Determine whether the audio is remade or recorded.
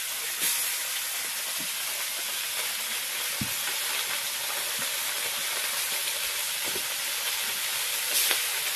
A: recorded